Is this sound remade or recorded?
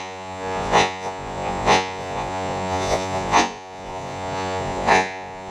remade